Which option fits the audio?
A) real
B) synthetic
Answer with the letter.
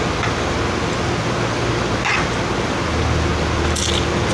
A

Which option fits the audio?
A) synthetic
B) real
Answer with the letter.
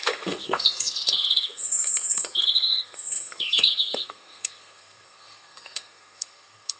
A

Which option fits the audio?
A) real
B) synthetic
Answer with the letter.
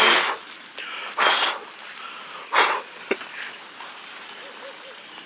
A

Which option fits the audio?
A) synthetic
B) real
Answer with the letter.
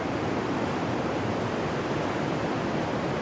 B